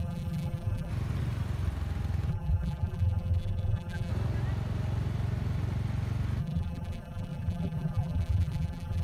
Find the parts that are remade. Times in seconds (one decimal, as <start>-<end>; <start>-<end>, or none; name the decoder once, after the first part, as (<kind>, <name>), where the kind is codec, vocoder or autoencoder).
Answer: 0.0-0.9 (vocoder, BigVGAN v2); 2.3-4.1; 6.4-9.0